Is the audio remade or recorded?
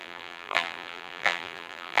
remade